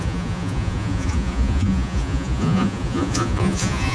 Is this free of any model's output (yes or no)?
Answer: no